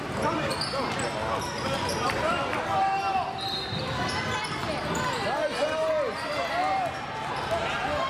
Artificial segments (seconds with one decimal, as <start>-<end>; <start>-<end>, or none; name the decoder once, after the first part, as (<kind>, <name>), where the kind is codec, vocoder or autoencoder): 0.0-0.5 (vocoder, BigVGAN v2); 1.9-2.4; 7.3-8.1